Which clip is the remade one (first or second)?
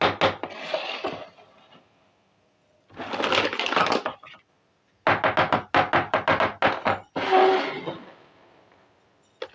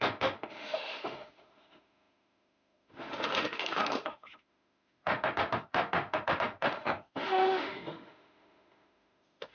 second